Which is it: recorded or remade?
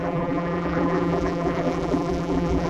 remade